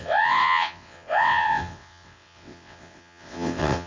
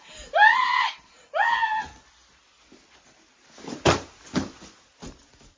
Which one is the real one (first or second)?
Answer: second